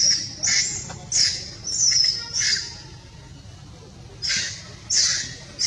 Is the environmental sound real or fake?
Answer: real